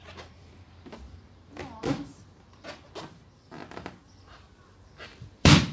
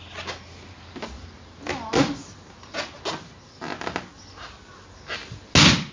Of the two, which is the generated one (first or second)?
first